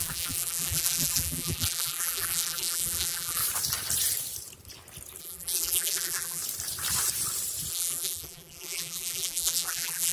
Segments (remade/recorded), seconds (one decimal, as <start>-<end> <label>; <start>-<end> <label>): 0.0-3.4 remade; 3.4-5.2 recorded; 5.2-6.4 remade; 6.4-7.7 recorded; 7.7-10.1 remade